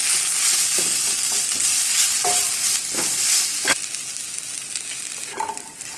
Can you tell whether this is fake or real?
real